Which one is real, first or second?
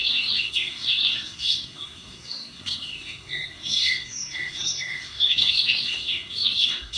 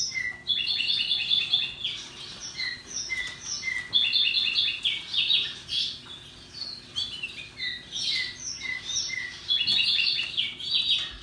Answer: second